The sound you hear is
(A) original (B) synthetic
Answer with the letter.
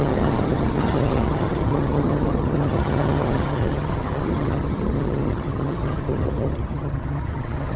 B